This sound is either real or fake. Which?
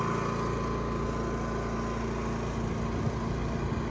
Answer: real